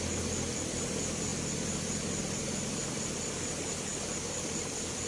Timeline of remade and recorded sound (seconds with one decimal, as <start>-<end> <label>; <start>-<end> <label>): 0.0-5.1 recorded